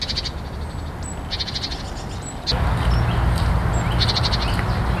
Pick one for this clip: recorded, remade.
recorded